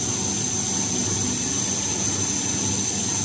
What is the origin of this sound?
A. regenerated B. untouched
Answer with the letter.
B